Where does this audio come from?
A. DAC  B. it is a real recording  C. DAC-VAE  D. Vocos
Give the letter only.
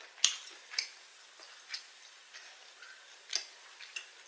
B